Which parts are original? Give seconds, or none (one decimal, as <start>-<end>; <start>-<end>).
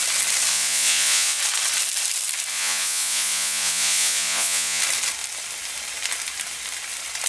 0.0-0.5; 1.4-2.5; 4.8-7.3